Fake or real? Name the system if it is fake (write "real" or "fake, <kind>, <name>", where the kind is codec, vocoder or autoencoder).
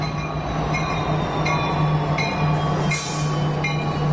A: real